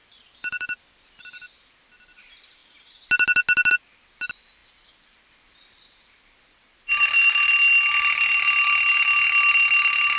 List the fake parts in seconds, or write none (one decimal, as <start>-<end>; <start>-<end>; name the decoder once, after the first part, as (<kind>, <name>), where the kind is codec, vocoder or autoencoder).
0.0-1.2 (vocoder, BigVGAN v2); 4.6-7.4